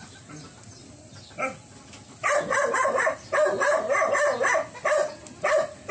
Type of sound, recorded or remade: recorded